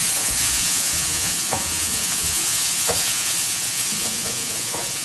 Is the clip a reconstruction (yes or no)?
yes